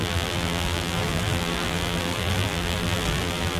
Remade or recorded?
remade